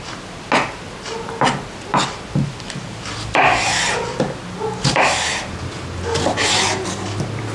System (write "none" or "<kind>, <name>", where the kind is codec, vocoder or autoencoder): none